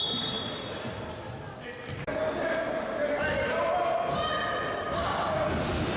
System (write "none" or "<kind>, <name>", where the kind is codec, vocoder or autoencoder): none